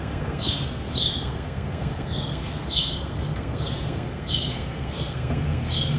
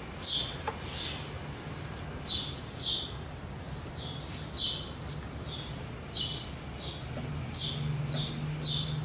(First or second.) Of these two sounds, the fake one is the first